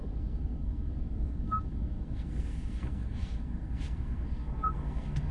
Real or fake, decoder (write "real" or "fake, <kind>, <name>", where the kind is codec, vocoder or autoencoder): fake, codec, SNAC